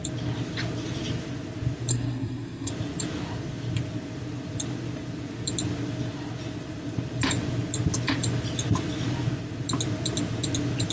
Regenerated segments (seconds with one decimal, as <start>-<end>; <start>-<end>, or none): 1.9-2.7